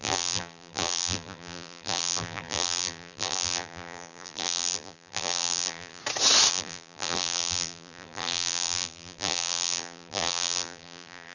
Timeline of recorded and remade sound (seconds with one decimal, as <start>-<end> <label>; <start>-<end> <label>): 0.0-6.0 remade; 6.0-6.5 recorded; 6.5-11.3 remade